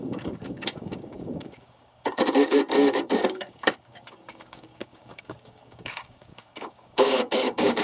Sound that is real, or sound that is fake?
fake